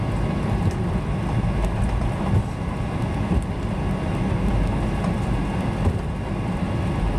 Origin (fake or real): real